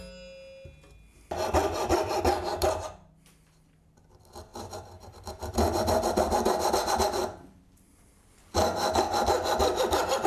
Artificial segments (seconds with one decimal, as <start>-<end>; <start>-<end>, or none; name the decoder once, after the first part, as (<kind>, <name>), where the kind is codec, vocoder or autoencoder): 1.6-2.2 (vocoder, BigVGAN v2); 4.5-8.3

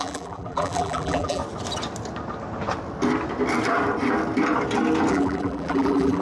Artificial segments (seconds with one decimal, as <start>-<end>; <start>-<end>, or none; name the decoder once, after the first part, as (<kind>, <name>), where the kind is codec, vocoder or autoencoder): 0.0-1.4 (vocoder, BigVGAN v2); 5.1-6.2

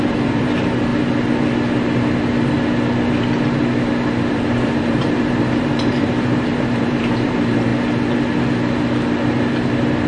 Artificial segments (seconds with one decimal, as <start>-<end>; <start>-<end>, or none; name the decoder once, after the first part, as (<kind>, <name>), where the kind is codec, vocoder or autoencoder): 0.0-0.9 (vocoder, BigVGAN v2); 4.3-7.7

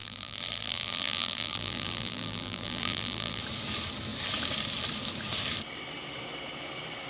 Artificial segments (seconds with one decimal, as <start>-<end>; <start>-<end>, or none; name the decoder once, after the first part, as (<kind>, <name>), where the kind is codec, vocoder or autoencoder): 0.0-3.4 (vocoder, BigVGAN v2)

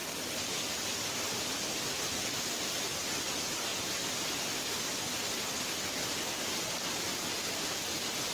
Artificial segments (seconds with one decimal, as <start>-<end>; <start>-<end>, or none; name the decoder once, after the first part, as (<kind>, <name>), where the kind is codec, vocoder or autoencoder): 0.0-2.6 (vocoder, BigVGAN v2); 3.7-4.8

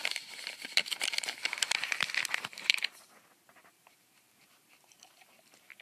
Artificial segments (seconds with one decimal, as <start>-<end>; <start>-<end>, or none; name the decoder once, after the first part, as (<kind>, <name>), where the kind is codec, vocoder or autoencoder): 0.0-1.8 (vocoder, BigVGAN v2); 2.5-5.8

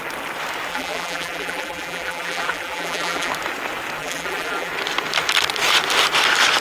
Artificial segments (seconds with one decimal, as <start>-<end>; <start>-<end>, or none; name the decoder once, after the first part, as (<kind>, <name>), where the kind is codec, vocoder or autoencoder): 0.7-3.3 (vocoder, BigVGAN v2); 4.0-4.7